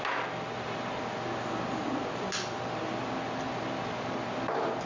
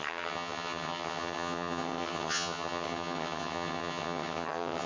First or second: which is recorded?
first